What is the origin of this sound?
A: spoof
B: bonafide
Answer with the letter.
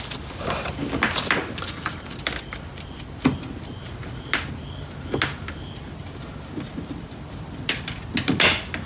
B